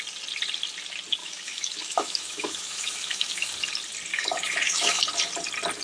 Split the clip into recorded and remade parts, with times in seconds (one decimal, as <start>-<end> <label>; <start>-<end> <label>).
0.0-1.2 recorded; 1.2-3.5 remade; 3.5-4.1 recorded; 4.1-5.0 remade; 5.0-5.8 recorded